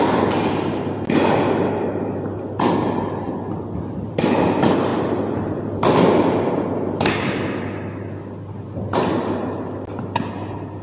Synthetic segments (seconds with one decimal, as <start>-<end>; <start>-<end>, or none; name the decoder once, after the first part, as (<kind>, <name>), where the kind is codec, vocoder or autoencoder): none